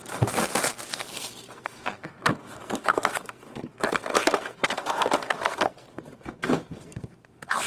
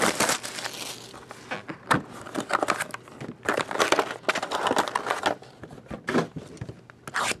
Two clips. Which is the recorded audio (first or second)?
second